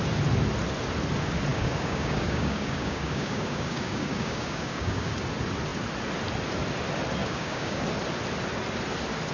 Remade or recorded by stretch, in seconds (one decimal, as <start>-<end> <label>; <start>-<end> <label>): 0.0-1.5 recorded; 1.5-5.1 remade; 5.1-7.2 recorded; 7.2-7.8 remade; 7.8-9.3 recorded